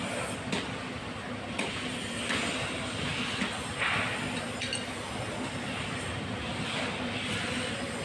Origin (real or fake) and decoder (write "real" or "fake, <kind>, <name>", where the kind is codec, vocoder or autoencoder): real